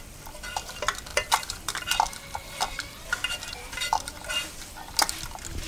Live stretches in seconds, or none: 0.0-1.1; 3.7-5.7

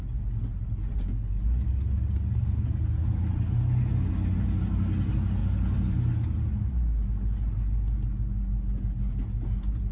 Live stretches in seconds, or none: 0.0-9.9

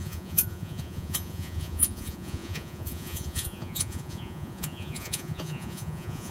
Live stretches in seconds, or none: none

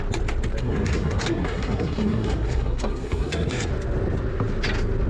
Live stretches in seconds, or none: 0.0-0.6; 3.7-5.1

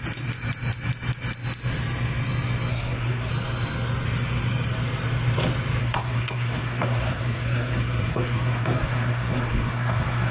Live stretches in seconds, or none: 0.0-2.7; 3.3-5.8